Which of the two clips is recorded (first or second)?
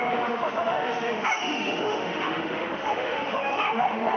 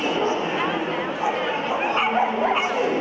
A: second